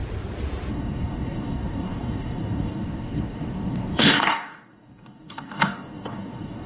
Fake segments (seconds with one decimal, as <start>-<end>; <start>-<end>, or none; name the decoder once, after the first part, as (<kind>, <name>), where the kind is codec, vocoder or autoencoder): 0.7-6.7 (codec, DAC)